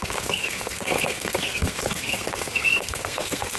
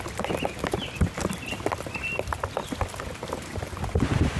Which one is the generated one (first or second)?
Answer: first